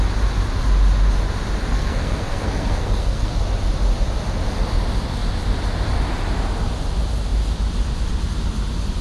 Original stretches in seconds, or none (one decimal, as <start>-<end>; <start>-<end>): 0.0-1.7; 3.4-9.0

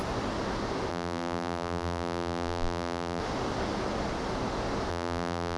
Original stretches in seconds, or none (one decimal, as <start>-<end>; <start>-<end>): 0.0-0.9; 3.2-4.9

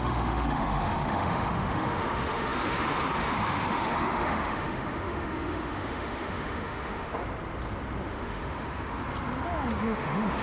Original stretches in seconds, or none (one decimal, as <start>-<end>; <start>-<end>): 7.2-8.1; 9.0-9.7

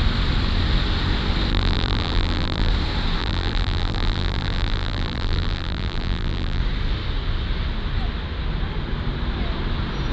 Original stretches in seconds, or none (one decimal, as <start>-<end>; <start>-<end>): 0.0-1.5; 2.7-3.2; 6.6-10.1